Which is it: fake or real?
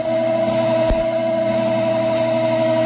real